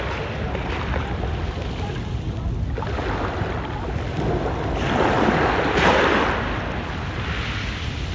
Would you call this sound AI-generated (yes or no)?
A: no